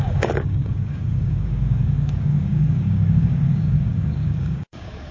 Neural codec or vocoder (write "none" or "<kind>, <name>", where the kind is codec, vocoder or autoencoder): codec, DAC